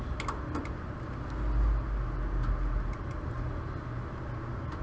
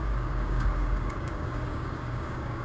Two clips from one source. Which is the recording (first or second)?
first